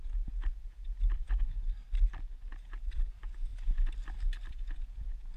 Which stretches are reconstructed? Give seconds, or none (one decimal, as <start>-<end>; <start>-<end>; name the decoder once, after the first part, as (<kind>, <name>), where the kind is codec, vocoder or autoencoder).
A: 0.0-1.6 (vocoder, Vocos); 2.6-3.5; 4.5-5.4